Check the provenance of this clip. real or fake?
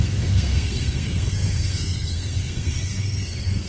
fake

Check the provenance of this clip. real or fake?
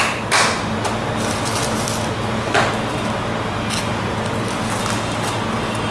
real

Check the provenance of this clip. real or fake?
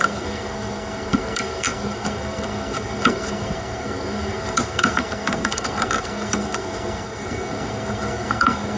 fake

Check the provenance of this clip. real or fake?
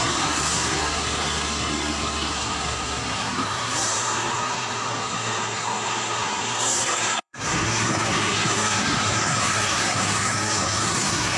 fake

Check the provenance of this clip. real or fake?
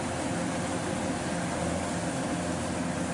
real